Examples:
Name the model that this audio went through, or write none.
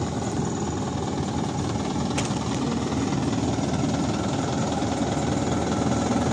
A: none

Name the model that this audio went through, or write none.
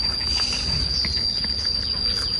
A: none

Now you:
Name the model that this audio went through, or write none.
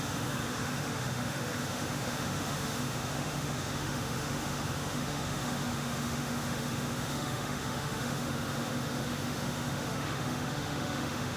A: autoencoder, DAC-VAE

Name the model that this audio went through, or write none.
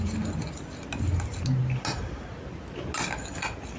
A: none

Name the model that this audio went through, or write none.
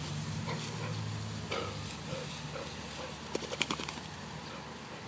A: none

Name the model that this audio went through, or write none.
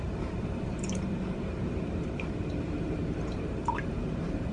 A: vocoder, BigVGAN v2